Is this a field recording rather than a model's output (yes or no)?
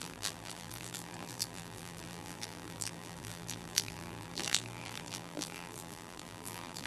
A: no